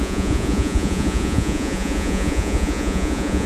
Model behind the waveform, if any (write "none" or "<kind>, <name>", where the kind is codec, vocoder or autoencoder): vocoder, Vocos